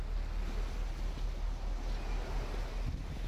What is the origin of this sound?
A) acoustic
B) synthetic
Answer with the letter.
A